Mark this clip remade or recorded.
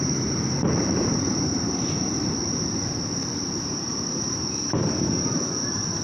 remade